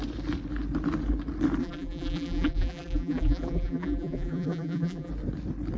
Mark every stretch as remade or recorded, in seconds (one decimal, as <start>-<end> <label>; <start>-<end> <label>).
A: 0.0-1.6 recorded; 1.6-5.1 remade; 5.1-5.8 recorded